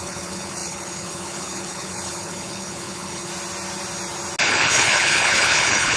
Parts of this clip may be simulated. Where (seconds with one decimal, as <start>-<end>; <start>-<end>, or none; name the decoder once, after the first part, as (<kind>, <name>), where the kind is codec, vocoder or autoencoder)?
0.0-3.3 (codec, HILCodec); 4.4-6.0